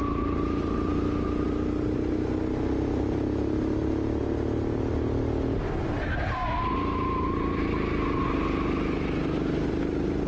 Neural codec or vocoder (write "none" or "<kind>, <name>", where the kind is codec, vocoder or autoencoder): none